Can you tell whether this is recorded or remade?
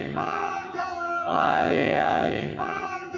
remade